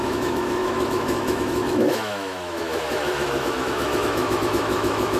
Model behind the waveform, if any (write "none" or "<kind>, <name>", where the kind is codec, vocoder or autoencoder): autoencoder, DAC-VAE